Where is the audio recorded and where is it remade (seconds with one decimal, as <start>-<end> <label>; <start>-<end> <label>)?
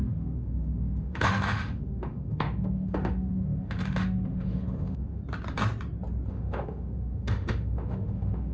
0.0-5.2 remade; 5.2-6.3 recorded; 6.3-8.5 remade